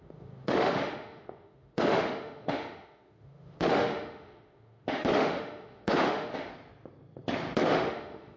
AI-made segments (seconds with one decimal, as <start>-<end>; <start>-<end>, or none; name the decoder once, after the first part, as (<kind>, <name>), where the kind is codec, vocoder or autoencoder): 0.0-6.5 (autoencoder, DAC-VAE); 7.7-8.4